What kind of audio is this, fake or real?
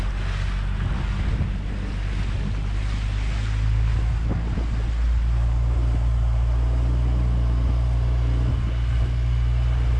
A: real